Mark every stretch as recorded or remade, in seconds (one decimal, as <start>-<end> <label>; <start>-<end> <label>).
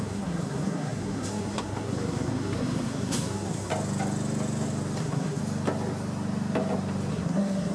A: 0.0-3.7 remade; 3.7-5.0 recorded; 5.0-5.4 remade; 5.4-7.1 recorded; 7.1-7.7 remade